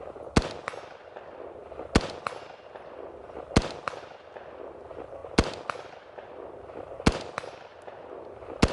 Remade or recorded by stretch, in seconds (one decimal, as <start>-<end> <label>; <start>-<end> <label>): 0.0-8.7 recorded